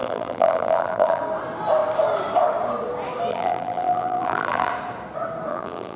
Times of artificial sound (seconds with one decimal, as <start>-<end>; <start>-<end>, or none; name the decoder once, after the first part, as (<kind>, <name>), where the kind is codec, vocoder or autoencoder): 0.0-1.2 (vocoder, BigVGAN v2); 3.3-4.7; 5.5-6.0